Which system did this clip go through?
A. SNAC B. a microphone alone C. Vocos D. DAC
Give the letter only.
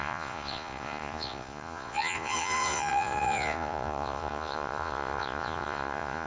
C